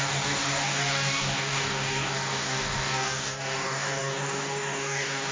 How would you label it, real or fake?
fake